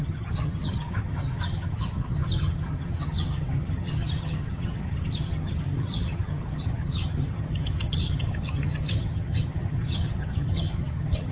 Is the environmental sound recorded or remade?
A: remade